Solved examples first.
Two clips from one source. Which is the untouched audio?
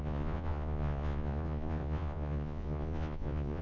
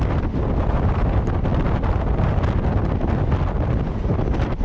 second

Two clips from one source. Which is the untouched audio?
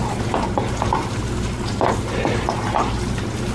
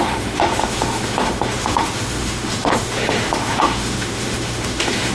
first